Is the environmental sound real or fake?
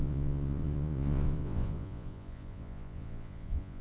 fake